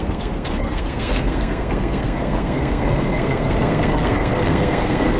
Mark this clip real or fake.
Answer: fake